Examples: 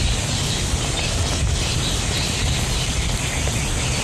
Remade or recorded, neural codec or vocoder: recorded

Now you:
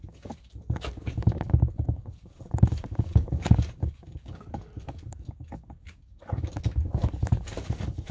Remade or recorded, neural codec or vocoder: remade, codec, DAC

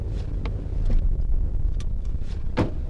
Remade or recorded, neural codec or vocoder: recorded